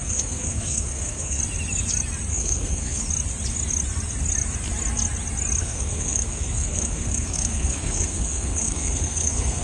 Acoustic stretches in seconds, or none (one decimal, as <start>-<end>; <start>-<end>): 1.4-2.3; 3.0-5.6